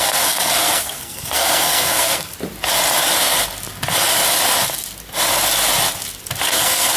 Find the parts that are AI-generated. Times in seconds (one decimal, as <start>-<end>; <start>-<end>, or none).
0.0-2.3; 6.5-7.0